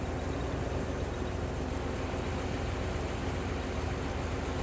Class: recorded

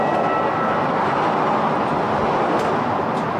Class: recorded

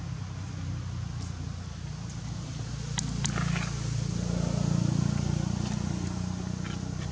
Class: recorded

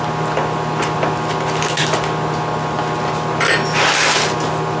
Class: recorded